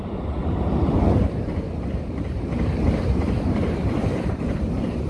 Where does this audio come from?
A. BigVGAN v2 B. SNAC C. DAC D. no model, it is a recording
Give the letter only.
A